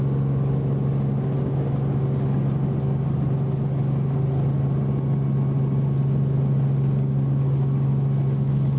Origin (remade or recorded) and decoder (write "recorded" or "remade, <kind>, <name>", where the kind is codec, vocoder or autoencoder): recorded